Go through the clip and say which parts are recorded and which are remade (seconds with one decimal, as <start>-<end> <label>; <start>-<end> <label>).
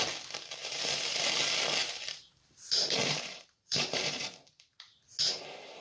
0.0-0.6 recorded; 0.6-1.2 remade; 1.2-1.8 recorded; 1.8-5.0 remade; 5.0-5.8 recorded